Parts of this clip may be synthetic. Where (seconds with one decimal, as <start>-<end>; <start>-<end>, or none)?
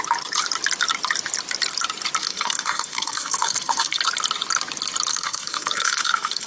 2.2-4.0; 5.1-6.5